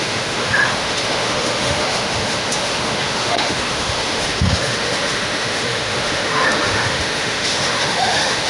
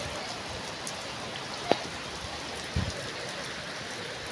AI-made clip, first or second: first